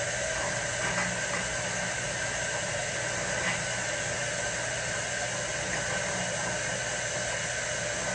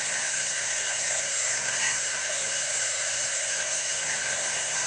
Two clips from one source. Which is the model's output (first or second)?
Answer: second